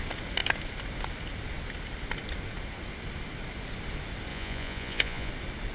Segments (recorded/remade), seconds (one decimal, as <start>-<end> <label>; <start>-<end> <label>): 0.0-4.3 recorded; 4.3-5.3 remade; 5.3-5.7 recorded